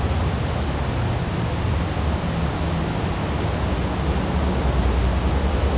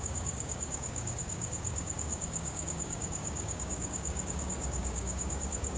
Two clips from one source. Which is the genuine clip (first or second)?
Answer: first